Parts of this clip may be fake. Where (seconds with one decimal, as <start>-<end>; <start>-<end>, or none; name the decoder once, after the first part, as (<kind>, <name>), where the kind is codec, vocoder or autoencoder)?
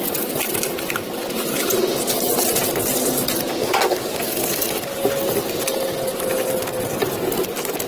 3.5-4.8 (codec, DAC)